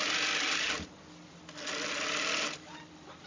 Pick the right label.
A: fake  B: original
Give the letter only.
B